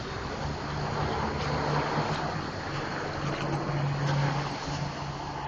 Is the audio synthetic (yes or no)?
no